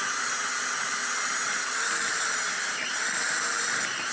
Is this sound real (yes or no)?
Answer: yes